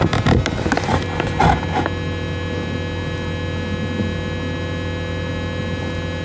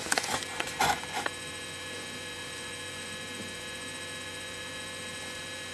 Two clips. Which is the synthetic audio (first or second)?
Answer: second